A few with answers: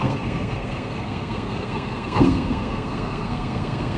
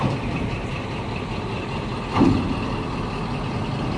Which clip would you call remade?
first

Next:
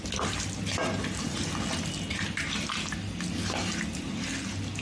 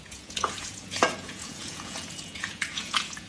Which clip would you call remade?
second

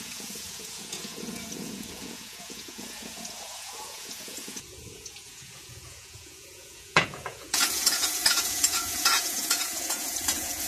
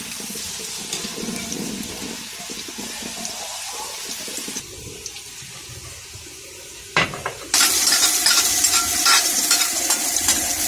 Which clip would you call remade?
first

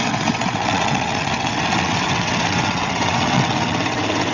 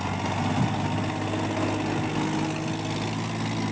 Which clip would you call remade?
first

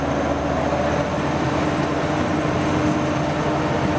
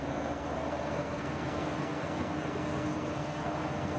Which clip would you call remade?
second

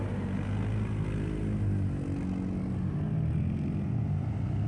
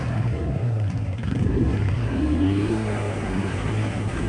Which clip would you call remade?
second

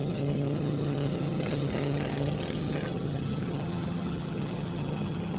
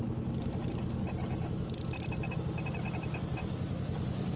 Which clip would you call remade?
first